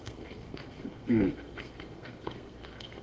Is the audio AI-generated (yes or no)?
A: yes